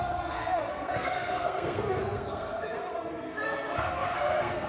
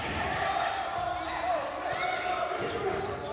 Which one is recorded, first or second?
second